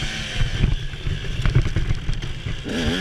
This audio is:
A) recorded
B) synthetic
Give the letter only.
A